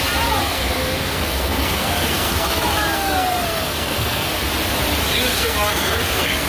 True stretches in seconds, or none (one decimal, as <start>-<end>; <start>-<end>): 0.0-0.4; 4.3-5.3